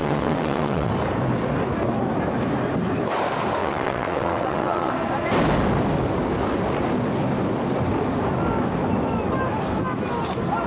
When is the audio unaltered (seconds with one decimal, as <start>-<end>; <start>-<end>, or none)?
0.9-3.6; 4.9-10.7